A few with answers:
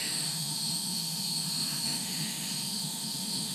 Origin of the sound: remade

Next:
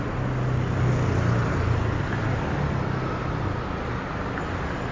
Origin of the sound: recorded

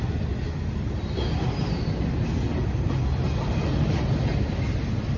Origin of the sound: recorded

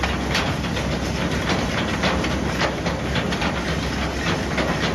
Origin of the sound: recorded